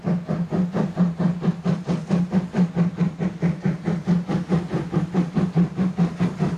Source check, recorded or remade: recorded